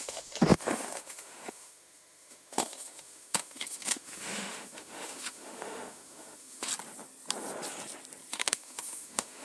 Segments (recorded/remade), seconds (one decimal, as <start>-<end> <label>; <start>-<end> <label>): 0.0-6.7 remade; 6.7-8.3 recorded; 8.3-9.4 remade